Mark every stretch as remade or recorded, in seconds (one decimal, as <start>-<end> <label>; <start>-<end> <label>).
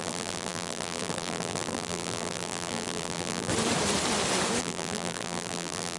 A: 0.0-3.5 remade; 3.5-4.6 recorded; 4.6-6.0 remade